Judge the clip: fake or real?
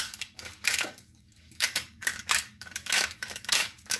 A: fake